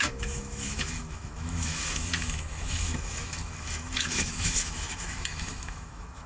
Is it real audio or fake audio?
fake